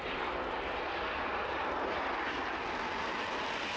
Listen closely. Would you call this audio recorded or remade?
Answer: recorded